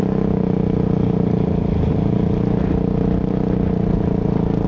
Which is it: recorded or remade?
recorded